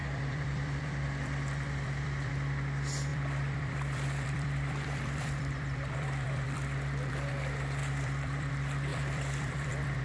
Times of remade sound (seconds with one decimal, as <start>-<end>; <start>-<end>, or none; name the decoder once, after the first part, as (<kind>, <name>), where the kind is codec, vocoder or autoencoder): 0.0-2.3 (vocoder, BigVGAN v2); 3.1-7.3; 7.8-8.5; 8.9-10.0